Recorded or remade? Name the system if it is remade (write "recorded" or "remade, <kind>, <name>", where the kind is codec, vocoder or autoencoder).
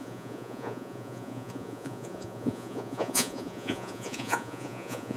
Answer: remade, vocoder, Vocos